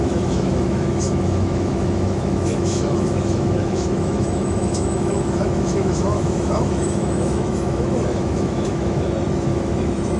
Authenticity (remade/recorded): remade